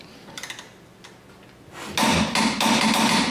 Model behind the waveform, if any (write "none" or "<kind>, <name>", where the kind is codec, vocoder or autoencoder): none